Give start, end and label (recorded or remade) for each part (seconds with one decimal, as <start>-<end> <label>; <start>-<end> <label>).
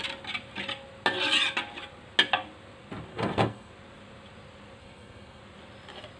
0.0-3.1 recorded; 3.1-3.7 remade; 3.7-4.8 recorded; 4.8-5.4 remade; 5.4-6.2 recorded